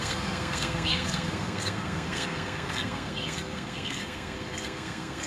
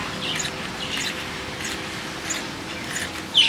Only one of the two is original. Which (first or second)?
second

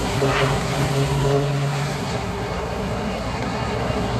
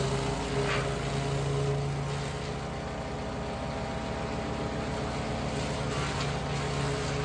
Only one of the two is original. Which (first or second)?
second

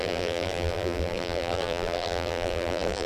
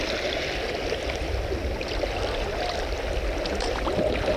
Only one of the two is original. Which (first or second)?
second